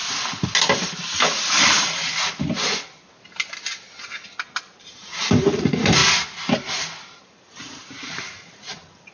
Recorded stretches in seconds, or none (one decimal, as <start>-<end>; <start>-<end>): 0.0-4.8; 6.0-7.2